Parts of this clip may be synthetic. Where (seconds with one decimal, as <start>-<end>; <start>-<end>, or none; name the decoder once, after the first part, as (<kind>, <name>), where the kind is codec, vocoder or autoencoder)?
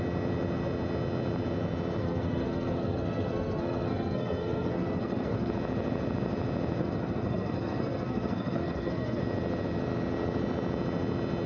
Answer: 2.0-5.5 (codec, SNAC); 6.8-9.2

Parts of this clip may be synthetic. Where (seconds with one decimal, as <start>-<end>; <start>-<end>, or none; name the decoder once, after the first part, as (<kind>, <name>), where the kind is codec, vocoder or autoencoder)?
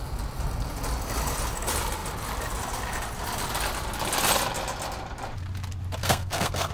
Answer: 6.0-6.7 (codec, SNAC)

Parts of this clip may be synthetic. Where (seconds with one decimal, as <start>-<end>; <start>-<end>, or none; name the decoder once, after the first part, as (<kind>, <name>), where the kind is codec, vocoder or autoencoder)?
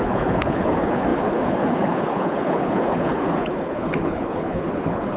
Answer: 0.0-5.2 (codec, HILCodec)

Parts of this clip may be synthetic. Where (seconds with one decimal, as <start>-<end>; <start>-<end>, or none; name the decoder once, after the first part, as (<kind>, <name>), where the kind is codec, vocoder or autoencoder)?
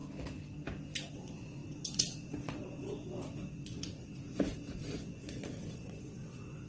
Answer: 1.1-6.7 (vocoder, WaveNeXt)